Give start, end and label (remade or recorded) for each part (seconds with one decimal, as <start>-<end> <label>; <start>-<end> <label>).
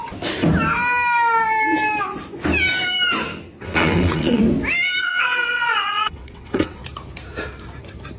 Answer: 0.0-3.6 recorded; 3.6-4.4 remade; 4.4-5.0 recorded; 5.0-6.8 remade; 6.8-8.2 recorded